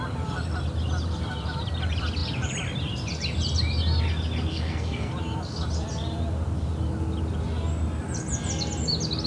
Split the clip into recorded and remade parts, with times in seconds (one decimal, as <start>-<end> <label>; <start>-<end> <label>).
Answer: 0.0-4.5 recorded; 4.5-5.1 remade; 5.1-9.3 recorded